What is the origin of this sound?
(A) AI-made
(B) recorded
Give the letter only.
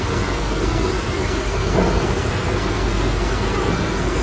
A